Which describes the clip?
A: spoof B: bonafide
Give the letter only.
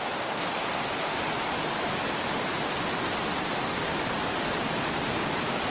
B